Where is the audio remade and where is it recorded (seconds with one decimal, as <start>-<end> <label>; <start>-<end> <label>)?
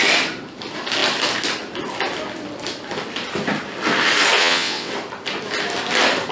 0.0-4.4 recorded; 4.4-4.9 remade; 4.9-6.3 recorded